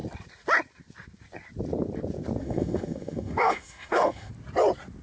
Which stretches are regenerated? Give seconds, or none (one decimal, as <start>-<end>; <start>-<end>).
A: 2.4-4.3